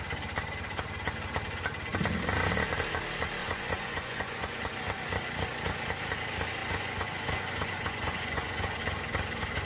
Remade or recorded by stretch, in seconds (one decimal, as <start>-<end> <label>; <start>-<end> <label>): 0.0-3.4 recorded; 3.4-4.6 remade; 4.6-6.6 recorded; 6.6-8.8 remade; 8.8-9.7 recorded